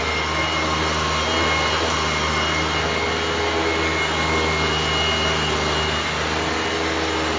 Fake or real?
real